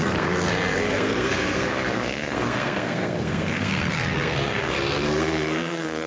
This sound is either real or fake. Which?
fake